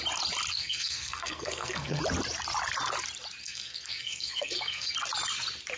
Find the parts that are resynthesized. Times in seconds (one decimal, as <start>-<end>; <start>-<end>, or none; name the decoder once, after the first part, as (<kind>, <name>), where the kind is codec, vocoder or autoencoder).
0.5-2.0 (codec, SNAC); 3.4-4.9